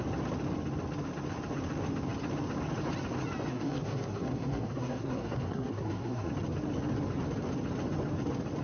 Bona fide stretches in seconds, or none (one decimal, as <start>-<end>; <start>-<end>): 0.0-3.5; 6.3-8.6